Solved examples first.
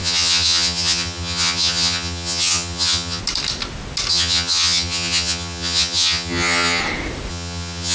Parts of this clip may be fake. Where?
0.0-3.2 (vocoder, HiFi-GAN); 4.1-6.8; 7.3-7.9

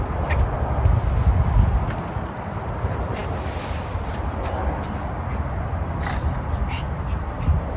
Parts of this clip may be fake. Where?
none

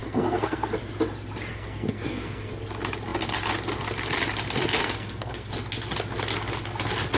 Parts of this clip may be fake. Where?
0.0-0.7 (codec, SNAC); 1.5-2.5; 4.8-5.5

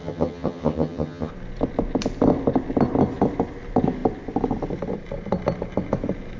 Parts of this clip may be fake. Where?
0.0-1.3 (vocoder, HiFi-GAN)

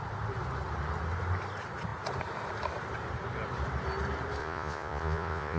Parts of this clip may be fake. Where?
4.4-5.6 (vocoder, Vocos)

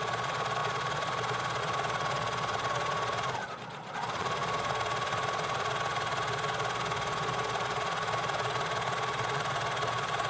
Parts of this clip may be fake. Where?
0.0-10.3 (vocoder, Vocos)

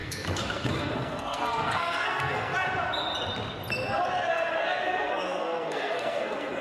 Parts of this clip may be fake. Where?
0.0-2.5 (codec, SNAC); 4.3-6.6

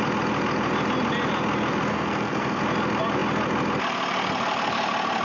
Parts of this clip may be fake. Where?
1.9-2.6 (codec, SNAC)